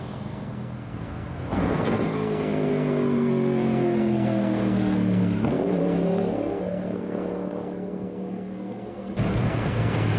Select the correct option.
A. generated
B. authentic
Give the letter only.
A